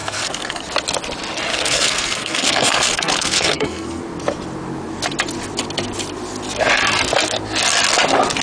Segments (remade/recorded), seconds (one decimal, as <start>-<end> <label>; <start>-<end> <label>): 0.0-0.6 remade; 0.6-1.5 recorded; 1.5-4.0 remade; 4.0-8.4 recorded